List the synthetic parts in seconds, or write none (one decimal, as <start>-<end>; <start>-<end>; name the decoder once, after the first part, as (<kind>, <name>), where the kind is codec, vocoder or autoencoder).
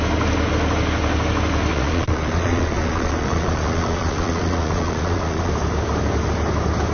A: 1.7-5.5 (vocoder, Vocos)